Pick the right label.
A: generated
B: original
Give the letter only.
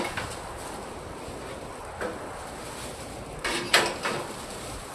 B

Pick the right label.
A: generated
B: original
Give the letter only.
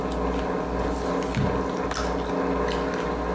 B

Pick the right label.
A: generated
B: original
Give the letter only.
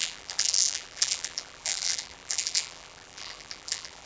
A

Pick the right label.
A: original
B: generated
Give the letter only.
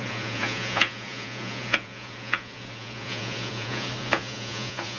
B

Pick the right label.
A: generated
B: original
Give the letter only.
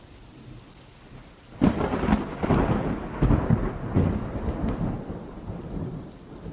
B